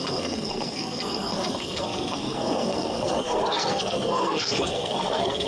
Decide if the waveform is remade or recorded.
remade